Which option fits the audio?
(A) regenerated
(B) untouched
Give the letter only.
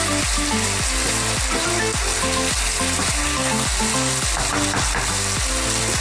B